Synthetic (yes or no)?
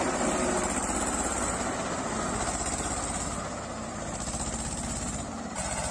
no